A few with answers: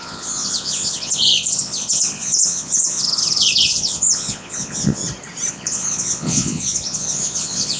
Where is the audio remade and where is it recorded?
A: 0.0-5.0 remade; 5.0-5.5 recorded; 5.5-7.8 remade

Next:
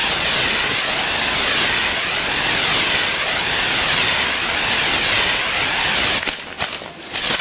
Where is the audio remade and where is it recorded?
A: 0.0-7.4 recorded